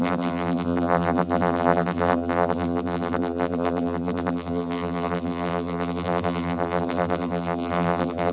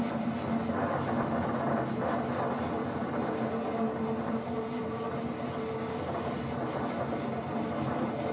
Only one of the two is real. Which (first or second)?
second